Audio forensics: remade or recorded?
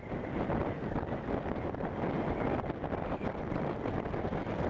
recorded